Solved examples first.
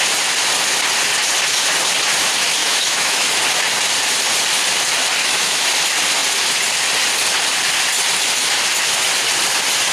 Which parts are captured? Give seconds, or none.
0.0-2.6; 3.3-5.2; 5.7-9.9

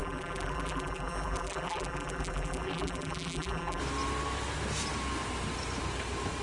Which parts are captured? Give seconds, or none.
3.8-6.4

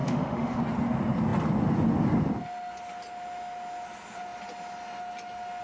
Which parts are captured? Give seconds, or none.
0.6-5.6